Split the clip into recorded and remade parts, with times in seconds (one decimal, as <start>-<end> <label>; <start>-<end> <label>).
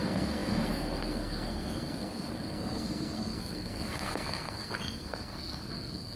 0.0-6.2 remade